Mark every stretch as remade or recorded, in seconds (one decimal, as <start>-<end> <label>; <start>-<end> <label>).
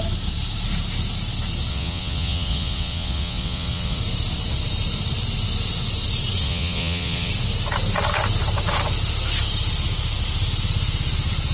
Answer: 0.0-1.7 recorded; 1.7-4.0 remade; 4.0-6.4 recorded; 6.4-7.3 remade; 7.3-11.5 recorded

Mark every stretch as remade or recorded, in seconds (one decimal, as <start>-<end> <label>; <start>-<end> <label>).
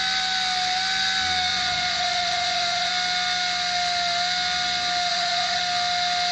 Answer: 0.0-1.5 recorded; 1.5-2.9 remade; 2.9-5.1 recorded; 5.1-5.6 remade; 5.6-6.3 recorded